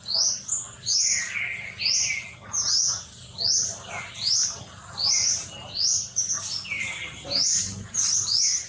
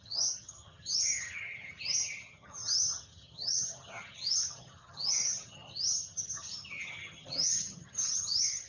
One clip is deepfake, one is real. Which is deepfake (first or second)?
second